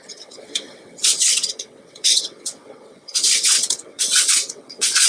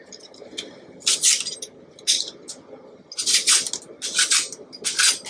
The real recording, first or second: second